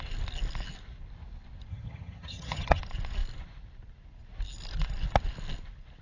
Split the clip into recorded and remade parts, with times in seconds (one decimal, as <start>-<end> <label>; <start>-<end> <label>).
0.0-1.7 recorded; 1.7-2.8 remade; 2.8-6.0 recorded